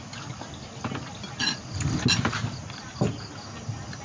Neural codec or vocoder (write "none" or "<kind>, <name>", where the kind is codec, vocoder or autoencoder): none